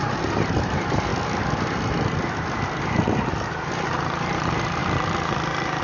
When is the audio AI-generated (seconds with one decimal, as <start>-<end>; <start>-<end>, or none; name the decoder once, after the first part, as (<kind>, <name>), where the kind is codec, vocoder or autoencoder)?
0.0-1.1 (vocoder, BigVGAN v2); 2.8-4.8